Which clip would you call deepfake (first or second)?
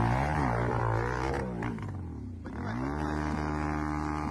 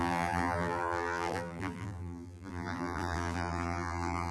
second